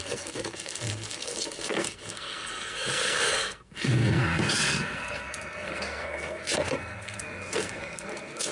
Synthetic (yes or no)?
yes